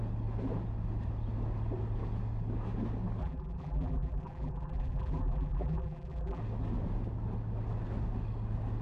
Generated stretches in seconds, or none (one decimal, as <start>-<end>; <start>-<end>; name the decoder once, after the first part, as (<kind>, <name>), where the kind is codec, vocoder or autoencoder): 3.2-6.4 (vocoder, BigVGAN v2)